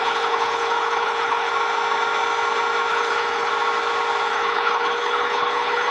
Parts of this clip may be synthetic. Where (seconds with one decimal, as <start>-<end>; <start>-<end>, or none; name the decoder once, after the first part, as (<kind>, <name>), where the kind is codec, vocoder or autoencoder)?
0.0-1.5 (codec, HILCodec); 2.9-3.5; 4.3-5.9